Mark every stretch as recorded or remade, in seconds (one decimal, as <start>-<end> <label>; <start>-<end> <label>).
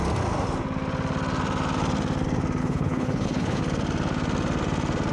0.0-2.6 recorded; 2.6-3.6 remade; 3.6-5.1 recorded